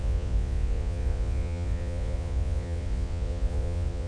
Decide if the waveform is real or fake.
fake